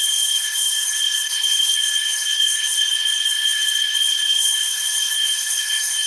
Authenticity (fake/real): fake